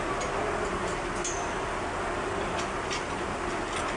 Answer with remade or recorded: recorded